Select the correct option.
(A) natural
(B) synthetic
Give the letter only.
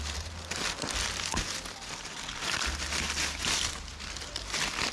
A